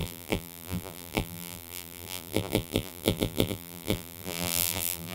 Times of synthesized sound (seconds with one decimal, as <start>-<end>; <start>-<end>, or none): 0.0-5.1

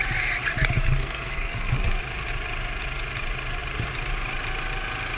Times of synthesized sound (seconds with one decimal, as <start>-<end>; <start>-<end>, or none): 1.0-2.0

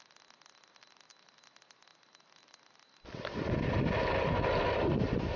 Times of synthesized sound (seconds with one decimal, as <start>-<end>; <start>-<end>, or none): none

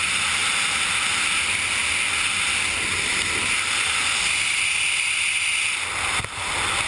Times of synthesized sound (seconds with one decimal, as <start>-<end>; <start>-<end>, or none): none

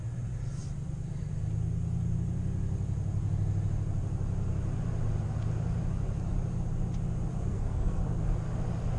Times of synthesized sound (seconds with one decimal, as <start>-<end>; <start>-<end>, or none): 7.3-8.0